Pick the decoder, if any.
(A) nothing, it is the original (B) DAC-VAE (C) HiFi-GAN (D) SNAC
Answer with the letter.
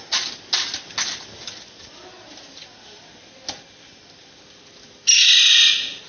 A